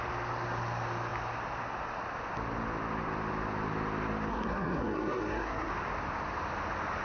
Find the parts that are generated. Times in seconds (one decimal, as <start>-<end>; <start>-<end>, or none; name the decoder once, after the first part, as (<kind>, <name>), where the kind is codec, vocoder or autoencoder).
4.3-5.7 (codec, SNAC)